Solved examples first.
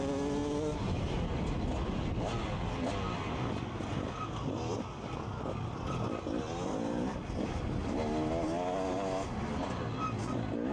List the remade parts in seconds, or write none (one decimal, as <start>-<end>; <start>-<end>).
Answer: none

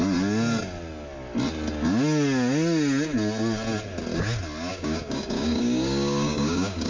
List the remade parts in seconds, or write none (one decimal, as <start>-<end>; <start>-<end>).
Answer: 4.7-6.9

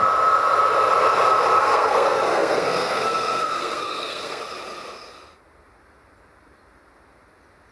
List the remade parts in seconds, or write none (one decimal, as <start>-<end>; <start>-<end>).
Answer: 1.6-4.4

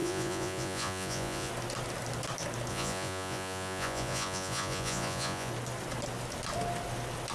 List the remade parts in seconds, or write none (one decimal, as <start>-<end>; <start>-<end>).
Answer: 0.0-1.5; 2.7-5.5

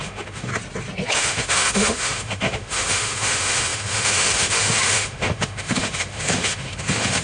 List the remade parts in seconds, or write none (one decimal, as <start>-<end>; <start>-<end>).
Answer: 0.0-0.5; 1.1-7.2